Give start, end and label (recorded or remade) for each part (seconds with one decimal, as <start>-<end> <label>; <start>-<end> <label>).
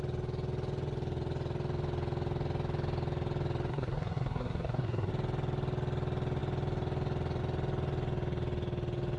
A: 0.0-3.7 recorded; 3.7-5.1 remade; 5.1-9.2 recorded